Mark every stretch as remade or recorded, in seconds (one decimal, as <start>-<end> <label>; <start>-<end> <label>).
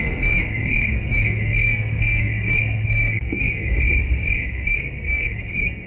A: 0.0-3.7 remade; 3.7-4.3 recorded; 4.3-5.9 remade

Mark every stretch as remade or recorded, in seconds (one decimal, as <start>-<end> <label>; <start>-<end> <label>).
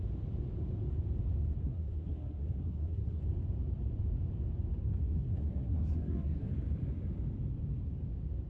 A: 0.0-1.6 recorded; 1.6-3.2 remade; 3.2-5.0 recorded; 5.0-6.5 remade; 6.5-8.5 recorded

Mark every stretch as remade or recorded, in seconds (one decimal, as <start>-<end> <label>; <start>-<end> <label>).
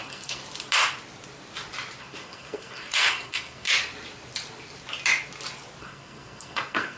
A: 0.0-0.4 remade; 0.4-2.0 recorded; 2.0-3.7 remade; 3.7-5.8 recorded; 5.8-7.0 remade